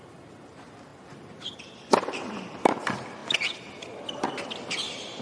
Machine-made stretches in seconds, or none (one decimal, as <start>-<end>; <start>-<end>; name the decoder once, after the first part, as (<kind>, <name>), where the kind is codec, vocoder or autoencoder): none